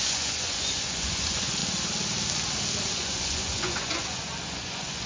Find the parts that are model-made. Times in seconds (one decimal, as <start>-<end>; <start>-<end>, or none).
0.0-1.6; 2.9-5.1